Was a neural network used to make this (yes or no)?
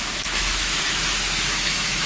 yes